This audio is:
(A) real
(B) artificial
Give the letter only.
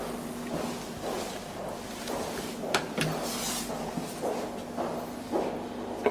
A